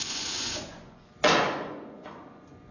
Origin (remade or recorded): remade